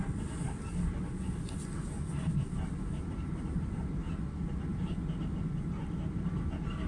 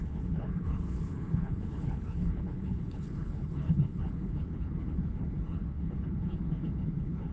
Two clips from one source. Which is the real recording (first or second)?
first